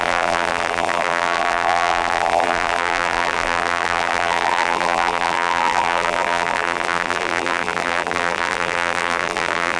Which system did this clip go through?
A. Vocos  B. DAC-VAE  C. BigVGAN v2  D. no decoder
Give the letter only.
C